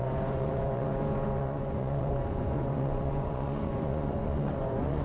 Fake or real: fake